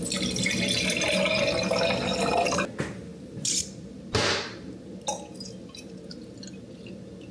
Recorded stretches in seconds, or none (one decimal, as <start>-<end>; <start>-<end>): 0.0-7.3